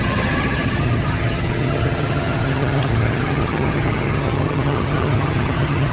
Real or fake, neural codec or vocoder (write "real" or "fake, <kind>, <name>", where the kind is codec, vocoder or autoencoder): fake, vocoder, HiFi-GAN